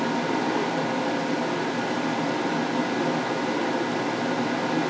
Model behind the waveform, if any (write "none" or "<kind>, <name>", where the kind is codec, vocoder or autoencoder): none